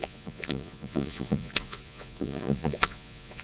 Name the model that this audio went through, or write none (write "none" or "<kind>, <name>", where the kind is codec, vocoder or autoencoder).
vocoder, Vocos